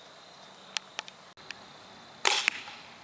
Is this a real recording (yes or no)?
yes